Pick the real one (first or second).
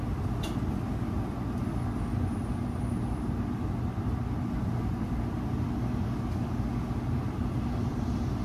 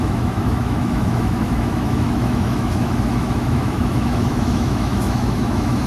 first